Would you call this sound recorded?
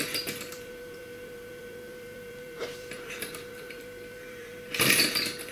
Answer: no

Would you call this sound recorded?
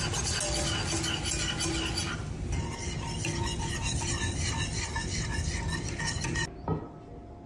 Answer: yes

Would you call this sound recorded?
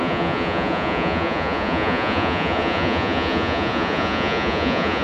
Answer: no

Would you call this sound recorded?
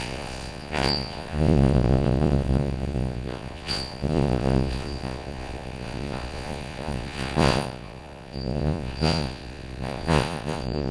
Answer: no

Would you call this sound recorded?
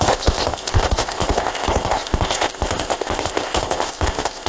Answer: no